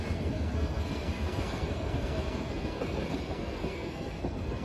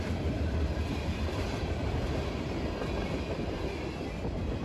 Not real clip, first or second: first